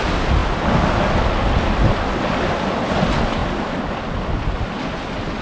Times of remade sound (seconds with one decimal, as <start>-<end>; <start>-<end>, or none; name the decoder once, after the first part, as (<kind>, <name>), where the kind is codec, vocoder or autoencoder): none